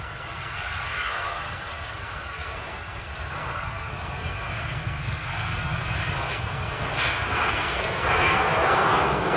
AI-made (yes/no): yes